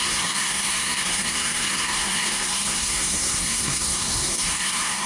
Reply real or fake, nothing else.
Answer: fake